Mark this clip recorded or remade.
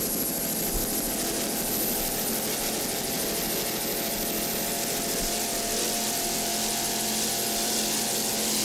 recorded